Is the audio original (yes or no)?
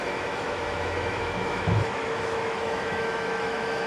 no